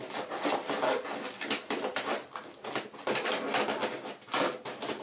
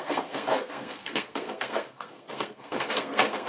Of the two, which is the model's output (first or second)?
second